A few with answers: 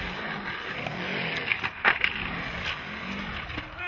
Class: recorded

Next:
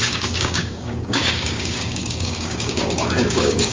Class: remade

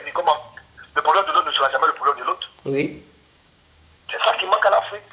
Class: remade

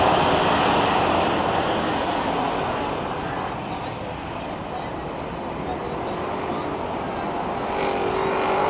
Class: recorded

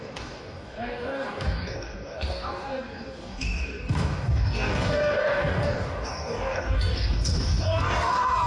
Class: remade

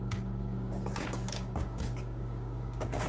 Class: remade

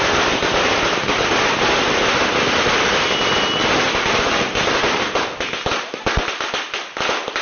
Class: recorded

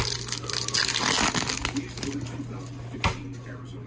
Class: recorded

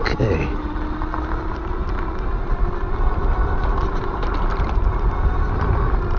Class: recorded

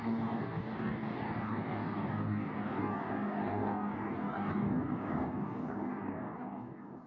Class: remade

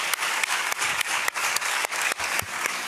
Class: remade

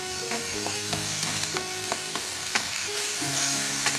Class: remade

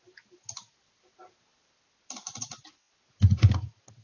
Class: recorded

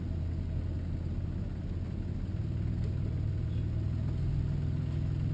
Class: recorded